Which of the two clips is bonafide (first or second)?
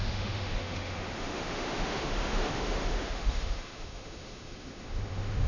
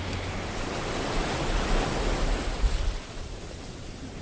second